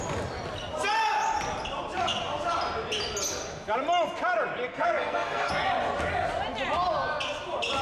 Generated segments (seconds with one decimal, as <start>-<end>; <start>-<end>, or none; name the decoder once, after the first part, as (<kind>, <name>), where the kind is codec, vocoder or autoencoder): 4.7-5.5 (codec, SNAC)